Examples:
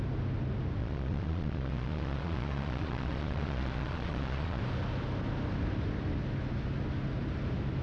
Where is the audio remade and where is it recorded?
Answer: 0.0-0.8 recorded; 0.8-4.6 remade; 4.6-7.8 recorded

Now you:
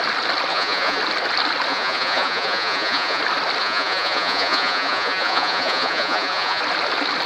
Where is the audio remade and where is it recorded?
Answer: 0.0-0.5 recorded; 0.5-1.0 remade; 1.0-1.7 recorded; 1.7-3.2 remade; 3.2-3.6 recorded; 3.6-6.6 remade; 6.6-7.3 recorded

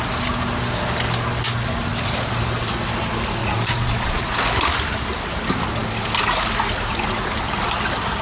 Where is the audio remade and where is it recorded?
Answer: 0.0-3.4 recorded; 3.4-4.3 remade; 4.3-8.2 recorded

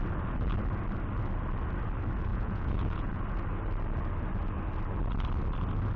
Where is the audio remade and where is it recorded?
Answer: 0.0-2.3 recorded; 2.3-3.2 remade; 3.2-6.0 recorded